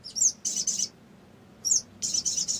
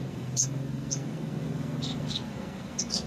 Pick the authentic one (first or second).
first